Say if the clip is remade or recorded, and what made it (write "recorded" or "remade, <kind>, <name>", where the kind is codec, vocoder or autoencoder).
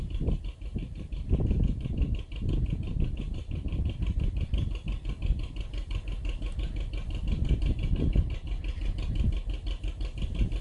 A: recorded